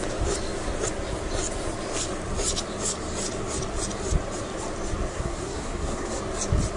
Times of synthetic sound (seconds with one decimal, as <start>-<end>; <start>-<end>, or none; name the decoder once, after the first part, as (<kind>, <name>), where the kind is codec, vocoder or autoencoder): 5.1-6.2 (codec, SNAC)